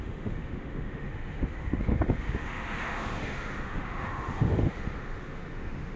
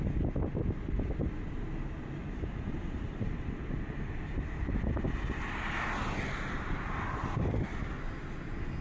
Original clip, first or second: second